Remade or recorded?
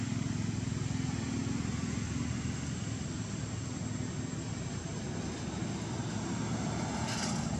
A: recorded